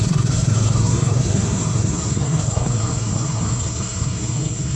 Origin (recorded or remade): remade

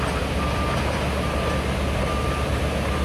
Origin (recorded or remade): recorded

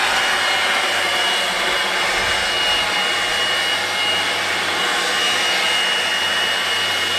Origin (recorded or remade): recorded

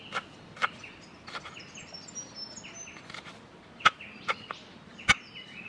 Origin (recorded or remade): recorded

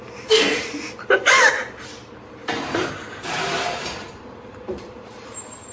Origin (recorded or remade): remade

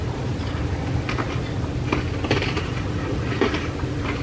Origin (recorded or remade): recorded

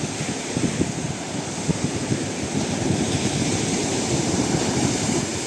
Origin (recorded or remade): remade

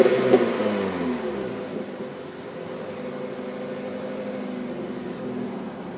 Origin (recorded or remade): recorded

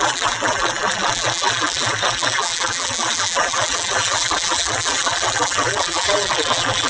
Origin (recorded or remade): remade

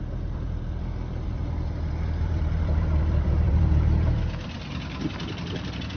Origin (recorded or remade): remade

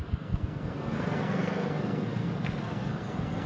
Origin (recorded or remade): remade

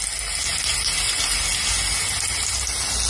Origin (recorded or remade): recorded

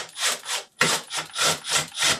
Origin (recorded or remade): remade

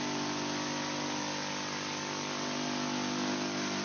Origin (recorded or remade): recorded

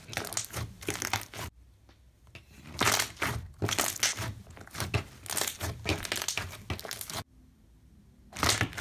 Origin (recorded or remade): recorded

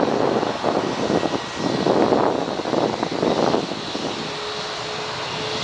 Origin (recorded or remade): recorded